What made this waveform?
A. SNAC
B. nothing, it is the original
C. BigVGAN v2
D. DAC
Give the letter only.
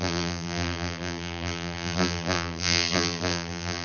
C